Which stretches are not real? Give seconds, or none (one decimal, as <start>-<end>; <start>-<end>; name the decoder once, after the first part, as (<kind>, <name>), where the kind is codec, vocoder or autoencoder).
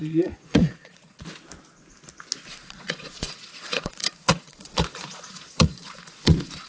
0.0-1.2 (vocoder, Vocos); 2.6-6.7